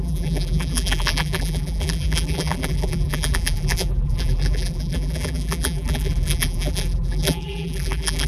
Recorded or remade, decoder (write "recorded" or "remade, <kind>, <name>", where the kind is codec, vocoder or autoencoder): remade, vocoder, BigVGAN v2